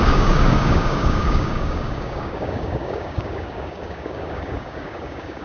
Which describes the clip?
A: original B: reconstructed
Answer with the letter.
B